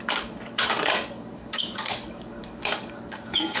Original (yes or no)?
no